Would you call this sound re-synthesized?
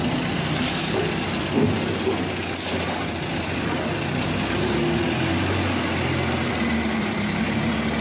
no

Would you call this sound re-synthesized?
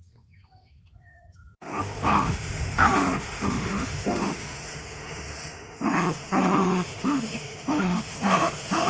yes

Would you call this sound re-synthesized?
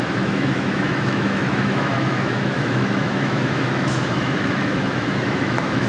yes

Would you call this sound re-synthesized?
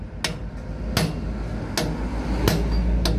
no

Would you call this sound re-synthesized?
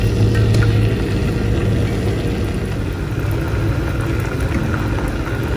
no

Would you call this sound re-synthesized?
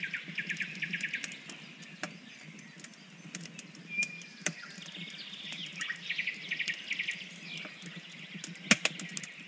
no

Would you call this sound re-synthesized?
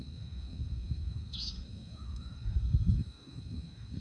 yes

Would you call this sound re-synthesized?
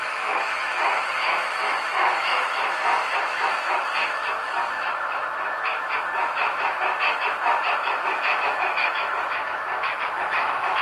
yes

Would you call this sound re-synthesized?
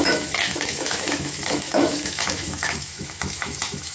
yes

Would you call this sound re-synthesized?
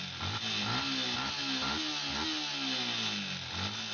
no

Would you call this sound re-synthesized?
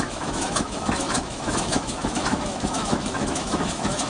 yes